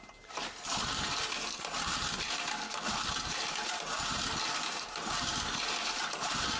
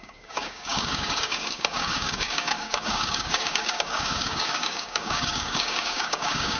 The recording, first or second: first